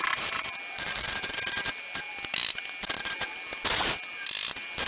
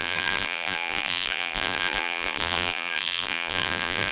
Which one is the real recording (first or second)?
first